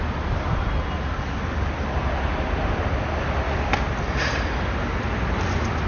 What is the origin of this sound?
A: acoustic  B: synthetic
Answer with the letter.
A